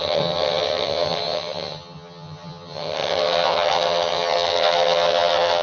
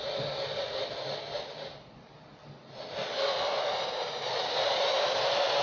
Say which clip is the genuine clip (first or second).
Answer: second